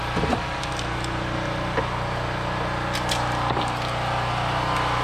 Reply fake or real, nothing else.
real